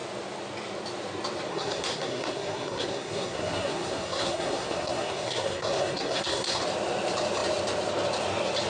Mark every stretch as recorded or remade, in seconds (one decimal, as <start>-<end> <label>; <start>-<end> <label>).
0.0-1.5 recorded; 1.5-6.6 remade; 6.6-8.7 recorded